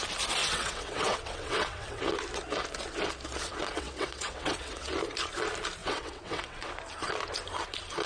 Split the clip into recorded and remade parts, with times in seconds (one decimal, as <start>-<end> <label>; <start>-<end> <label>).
0.0-0.4 recorded; 0.4-2.0 remade; 2.0-3.4 recorded; 3.4-4.9 remade; 4.9-5.8 recorded; 5.8-6.7 remade; 6.7-8.1 recorded